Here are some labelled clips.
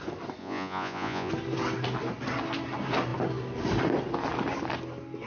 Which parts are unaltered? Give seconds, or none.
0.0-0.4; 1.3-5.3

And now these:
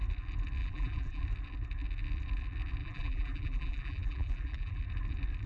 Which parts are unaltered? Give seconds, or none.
0.0-0.6; 1.2-2.8; 4.8-5.5

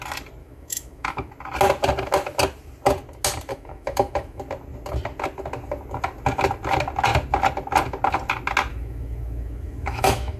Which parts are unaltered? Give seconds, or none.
0.0-0.4; 1.3-3.5; 4.4-8.7